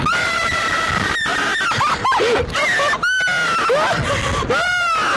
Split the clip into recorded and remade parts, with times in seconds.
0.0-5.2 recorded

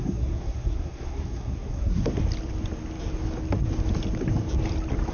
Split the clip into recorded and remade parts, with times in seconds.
0.0-2.0 remade; 2.0-5.1 recorded